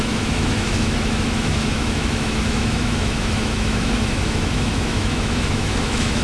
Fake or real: fake